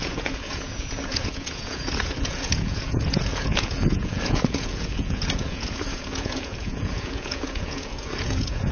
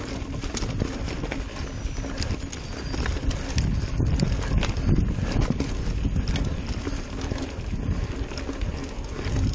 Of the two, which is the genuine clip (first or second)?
second